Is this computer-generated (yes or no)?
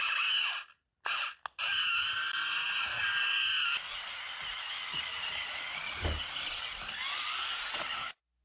no